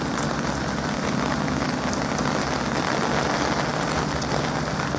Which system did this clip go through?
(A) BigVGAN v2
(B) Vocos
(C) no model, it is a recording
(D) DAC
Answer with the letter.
C